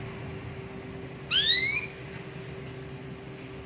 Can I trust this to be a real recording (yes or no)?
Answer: yes